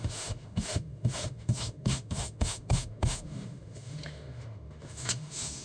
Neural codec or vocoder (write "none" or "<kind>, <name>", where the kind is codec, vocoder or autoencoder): autoencoder, DAC-VAE